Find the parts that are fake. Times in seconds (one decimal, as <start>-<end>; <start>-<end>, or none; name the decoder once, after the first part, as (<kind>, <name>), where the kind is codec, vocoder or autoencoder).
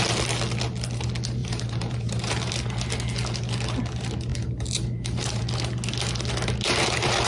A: 1.4-2.5 (vocoder, BigVGAN v2); 4.3-5.4